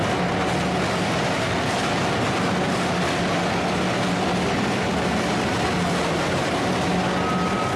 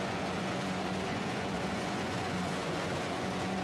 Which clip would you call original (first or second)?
first